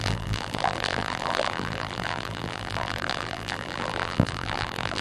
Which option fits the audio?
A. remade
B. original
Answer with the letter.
A